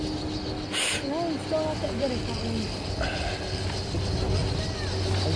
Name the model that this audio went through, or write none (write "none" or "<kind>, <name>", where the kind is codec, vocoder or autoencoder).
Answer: none